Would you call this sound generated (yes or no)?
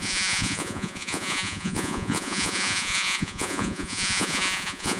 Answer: yes